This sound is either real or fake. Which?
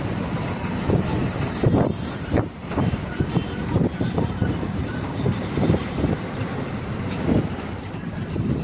fake